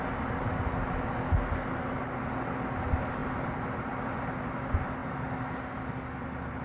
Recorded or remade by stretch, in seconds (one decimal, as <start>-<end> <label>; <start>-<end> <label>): 0.0-6.6 recorded